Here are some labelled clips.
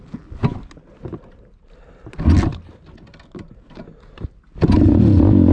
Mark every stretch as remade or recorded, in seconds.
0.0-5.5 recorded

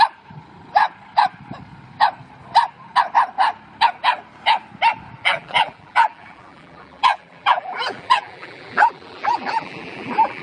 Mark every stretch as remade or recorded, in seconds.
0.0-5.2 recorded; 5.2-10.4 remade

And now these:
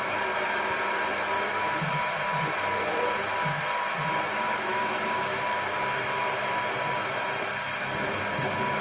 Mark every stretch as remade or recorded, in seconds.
0.0-4.7 recorded; 4.7-5.4 remade; 5.4-8.8 recorded